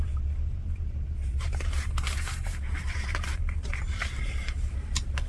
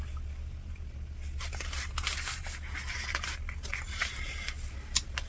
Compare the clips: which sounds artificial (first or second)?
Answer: first